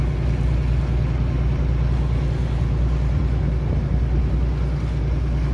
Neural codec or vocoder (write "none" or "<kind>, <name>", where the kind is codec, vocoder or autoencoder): none